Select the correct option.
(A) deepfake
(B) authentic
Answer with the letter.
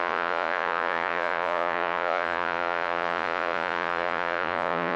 A